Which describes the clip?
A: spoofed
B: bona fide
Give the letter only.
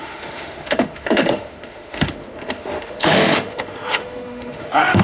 A